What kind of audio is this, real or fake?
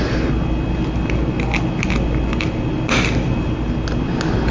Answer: real